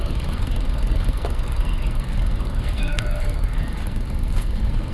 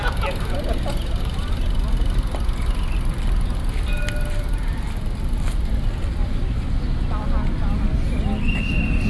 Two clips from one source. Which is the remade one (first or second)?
first